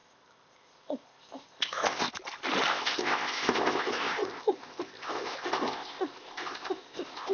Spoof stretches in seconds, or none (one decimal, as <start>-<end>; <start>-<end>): 0.0-2.1; 2.7-7.3